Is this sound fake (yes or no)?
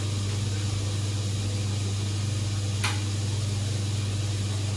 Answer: no